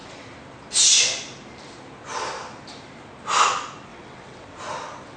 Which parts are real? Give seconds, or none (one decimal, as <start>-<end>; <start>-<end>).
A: 0.0-3.9; 4.6-5.2